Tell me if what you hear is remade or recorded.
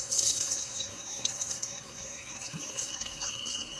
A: remade